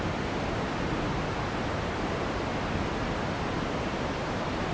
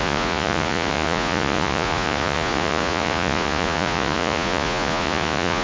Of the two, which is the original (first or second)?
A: first